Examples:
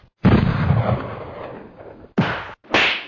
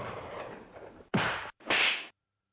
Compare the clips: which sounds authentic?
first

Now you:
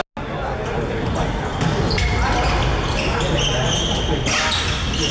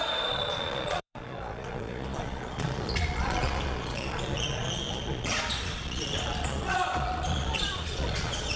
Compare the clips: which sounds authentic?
first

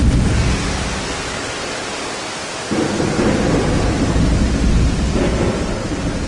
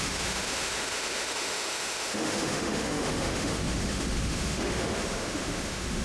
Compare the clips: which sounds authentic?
first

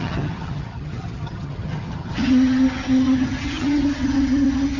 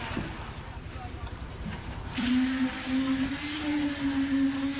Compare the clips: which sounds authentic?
second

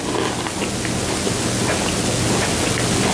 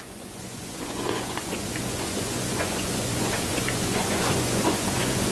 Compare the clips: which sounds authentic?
first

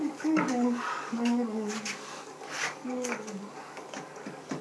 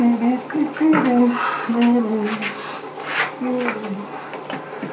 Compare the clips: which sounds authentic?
second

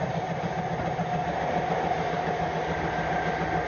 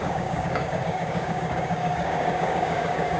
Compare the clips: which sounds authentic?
first